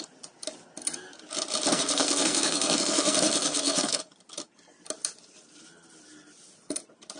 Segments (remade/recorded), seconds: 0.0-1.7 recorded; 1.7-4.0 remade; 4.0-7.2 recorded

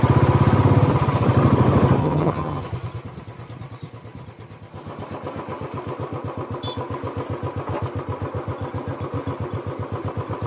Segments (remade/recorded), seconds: 0.0-2.0 recorded; 2.0-2.6 remade; 2.6-10.5 recorded

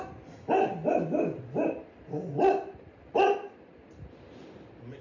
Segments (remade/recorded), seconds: 0.0-5.0 recorded

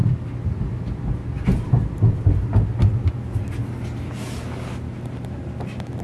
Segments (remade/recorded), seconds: 0.0-6.0 recorded

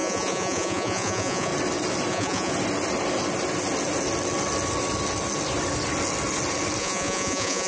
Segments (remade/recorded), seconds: 0.0-1.5 remade; 1.5-2.1 recorded; 2.1-2.5 remade; 2.5-6.8 recorded; 6.8-7.7 remade

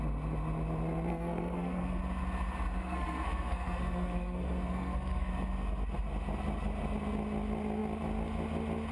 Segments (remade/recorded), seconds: 0.0-1.1 recorded; 1.1-2.0 remade; 2.0-2.8 recorded; 2.8-5.3 remade; 5.3-8.9 recorded

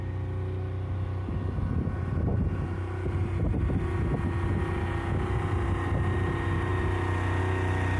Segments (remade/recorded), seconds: 0.0-8.0 recorded